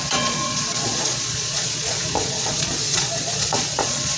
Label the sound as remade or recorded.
remade